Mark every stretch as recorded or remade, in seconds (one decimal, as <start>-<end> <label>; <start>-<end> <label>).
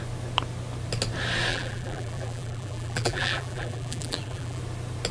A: 0.0-1.5 recorded; 1.5-4.6 remade; 4.6-5.1 recorded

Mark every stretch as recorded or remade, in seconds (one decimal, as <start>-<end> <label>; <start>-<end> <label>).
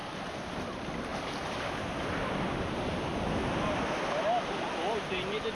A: 0.0-0.6 recorded; 0.6-1.1 remade; 1.1-4.4 recorded; 4.4-5.5 remade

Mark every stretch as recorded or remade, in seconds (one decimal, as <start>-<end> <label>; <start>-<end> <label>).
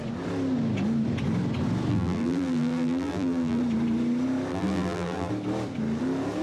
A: 0.0-1.9 recorded; 1.9-3.6 remade; 3.6-4.5 recorded; 4.5-5.3 remade; 5.3-6.4 recorded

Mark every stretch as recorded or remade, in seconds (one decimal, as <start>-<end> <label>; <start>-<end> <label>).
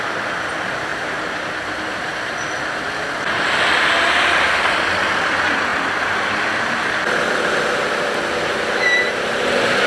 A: 0.0-5.7 recorded; 5.7-6.3 remade; 6.3-9.9 recorded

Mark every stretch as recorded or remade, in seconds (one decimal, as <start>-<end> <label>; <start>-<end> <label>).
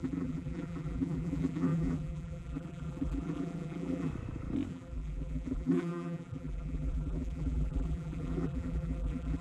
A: 0.0-4.1 remade; 4.1-4.7 recorded; 4.7-9.4 remade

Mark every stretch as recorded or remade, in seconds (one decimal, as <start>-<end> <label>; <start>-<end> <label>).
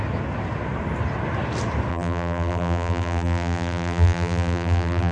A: 0.0-1.9 recorded; 1.9-5.1 remade